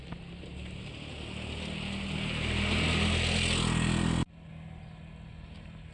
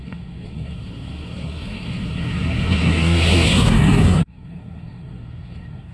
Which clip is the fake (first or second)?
second